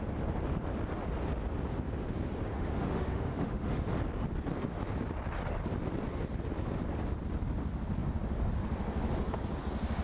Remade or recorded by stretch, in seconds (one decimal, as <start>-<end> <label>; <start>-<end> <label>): 0.0-2.5 recorded; 2.5-3.9 remade; 3.9-10.0 recorded